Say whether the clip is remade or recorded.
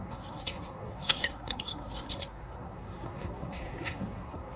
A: remade